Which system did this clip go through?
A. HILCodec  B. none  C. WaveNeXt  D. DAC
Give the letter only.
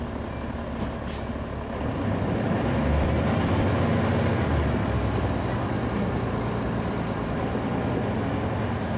B